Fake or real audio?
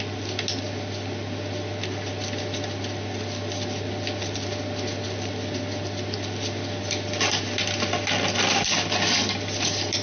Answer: real